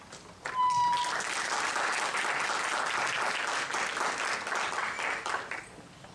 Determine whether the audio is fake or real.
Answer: real